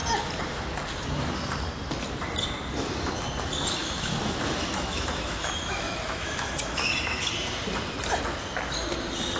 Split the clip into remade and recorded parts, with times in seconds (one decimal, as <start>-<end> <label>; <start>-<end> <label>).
0.0-3.8 recorded; 3.8-7.3 remade; 7.3-9.4 recorded

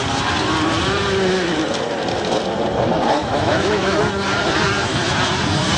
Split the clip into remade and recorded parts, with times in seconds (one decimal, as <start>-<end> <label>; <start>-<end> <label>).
0.0-3.2 recorded; 3.2-4.0 remade; 4.0-5.8 recorded